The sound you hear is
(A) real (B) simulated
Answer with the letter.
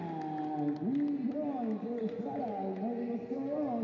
A